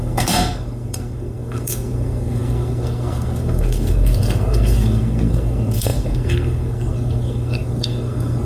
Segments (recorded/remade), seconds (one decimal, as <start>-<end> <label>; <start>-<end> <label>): 0.0-8.4 remade